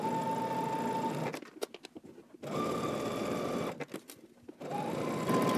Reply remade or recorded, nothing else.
recorded